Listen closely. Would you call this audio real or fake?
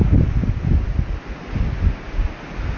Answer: real